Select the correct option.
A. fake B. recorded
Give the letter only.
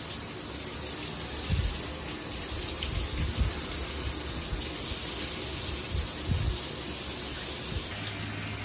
B